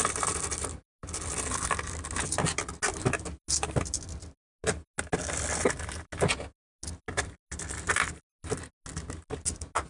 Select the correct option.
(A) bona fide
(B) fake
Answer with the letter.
A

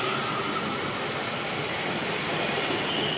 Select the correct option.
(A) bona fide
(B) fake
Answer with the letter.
A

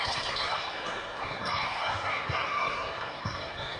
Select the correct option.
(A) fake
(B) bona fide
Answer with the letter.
A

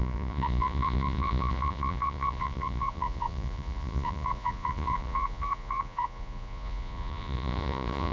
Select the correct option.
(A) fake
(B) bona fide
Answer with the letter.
A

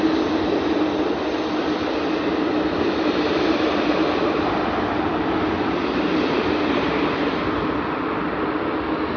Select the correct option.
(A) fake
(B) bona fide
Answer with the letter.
B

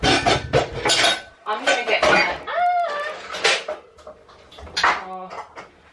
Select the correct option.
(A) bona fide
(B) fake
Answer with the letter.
A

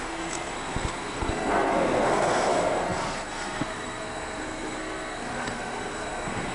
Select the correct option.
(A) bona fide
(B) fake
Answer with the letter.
B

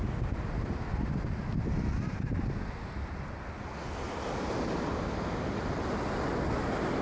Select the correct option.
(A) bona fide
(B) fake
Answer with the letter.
A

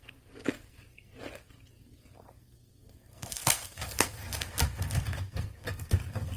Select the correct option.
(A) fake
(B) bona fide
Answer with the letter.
A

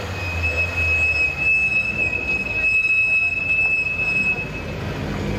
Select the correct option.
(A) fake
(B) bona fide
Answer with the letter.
B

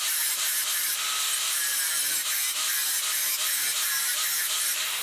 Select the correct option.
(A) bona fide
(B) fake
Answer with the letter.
A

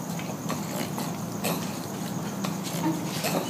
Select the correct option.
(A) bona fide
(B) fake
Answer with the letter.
A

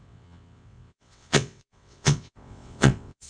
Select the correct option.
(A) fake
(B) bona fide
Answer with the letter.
A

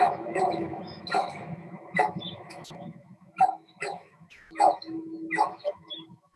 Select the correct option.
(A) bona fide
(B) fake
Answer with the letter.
B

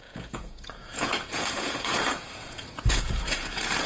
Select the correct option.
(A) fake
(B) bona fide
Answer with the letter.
A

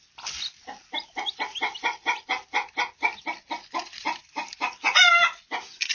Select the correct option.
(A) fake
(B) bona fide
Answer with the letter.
B